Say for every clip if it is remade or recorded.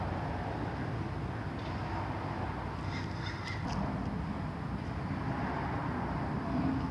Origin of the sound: recorded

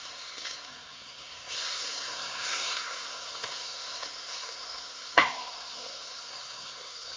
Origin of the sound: remade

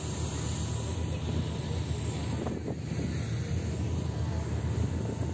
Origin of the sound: recorded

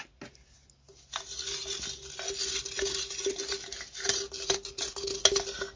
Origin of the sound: recorded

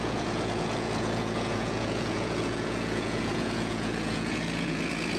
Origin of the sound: remade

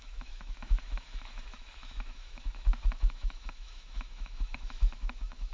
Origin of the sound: remade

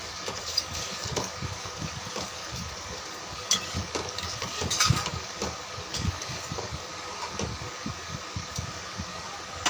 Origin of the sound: remade